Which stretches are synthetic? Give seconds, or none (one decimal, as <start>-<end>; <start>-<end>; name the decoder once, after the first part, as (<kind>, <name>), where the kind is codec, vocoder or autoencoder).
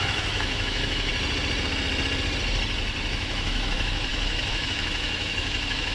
0.0-1.1 (autoencoder, DAC-VAE); 3.1-5.9